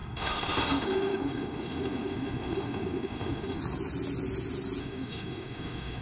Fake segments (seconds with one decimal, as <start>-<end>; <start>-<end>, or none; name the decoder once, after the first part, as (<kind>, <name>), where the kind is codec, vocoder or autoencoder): 0.0-3.6 (autoencoder, DAC-VAE); 4.8-6.0